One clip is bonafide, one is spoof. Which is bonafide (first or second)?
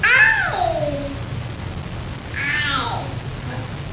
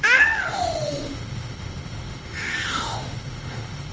first